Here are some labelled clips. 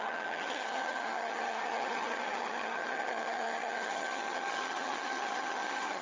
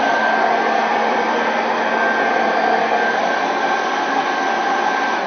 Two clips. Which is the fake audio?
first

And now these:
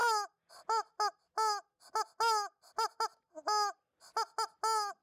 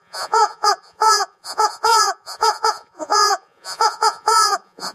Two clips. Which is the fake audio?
second